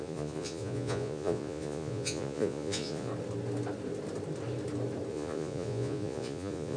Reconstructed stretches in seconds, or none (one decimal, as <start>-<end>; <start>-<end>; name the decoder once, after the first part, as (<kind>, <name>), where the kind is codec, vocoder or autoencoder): 0.0-3.1 (vocoder, Vocos); 5.1-6.8